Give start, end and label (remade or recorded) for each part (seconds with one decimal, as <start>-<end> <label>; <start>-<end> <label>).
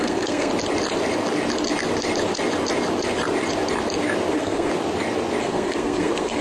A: 0.0-0.5 remade; 0.5-4.3 recorded; 4.3-4.7 remade; 4.7-5.4 recorded; 5.4-6.4 remade